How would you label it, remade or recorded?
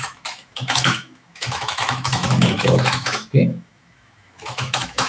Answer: remade